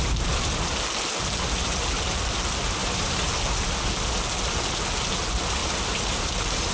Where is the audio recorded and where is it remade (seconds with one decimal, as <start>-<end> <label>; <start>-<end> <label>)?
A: 0.0-2.8 recorded; 2.8-3.3 remade; 3.3-5.6 recorded; 5.6-6.7 remade